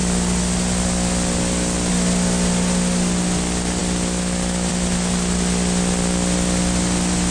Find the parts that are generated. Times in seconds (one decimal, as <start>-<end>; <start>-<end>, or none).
none